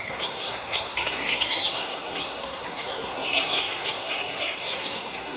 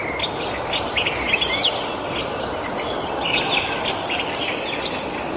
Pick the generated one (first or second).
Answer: first